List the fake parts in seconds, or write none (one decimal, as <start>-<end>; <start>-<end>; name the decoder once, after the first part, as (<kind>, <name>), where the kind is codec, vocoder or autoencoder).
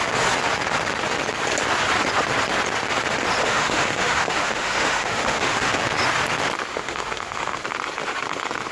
3.4-5.7 (autoencoder, DAC-VAE); 6.7-7.6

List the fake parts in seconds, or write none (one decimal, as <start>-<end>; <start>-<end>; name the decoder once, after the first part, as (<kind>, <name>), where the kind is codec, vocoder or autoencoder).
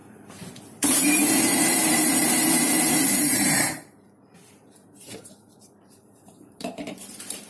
0.0-7.5 (vocoder, BigVGAN v2)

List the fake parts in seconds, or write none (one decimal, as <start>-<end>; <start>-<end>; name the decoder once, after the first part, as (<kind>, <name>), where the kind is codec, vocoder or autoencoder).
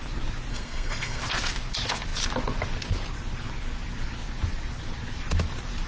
0.5-1.2 (codec, SNAC)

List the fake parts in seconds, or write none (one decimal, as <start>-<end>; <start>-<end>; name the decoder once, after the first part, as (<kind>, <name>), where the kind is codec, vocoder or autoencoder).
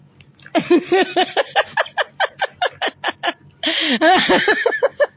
none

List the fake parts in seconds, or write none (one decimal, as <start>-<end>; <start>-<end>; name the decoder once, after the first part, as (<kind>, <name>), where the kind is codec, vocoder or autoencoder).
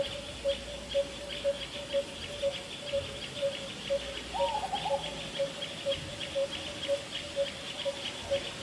none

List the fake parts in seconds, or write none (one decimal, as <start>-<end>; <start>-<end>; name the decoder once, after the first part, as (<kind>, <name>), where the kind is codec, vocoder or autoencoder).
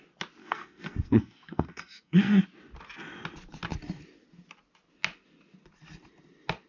0.4-2.4 (codec, SNAC)